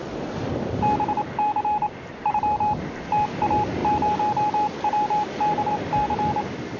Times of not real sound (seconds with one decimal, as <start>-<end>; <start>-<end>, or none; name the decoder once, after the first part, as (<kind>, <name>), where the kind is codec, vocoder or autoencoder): none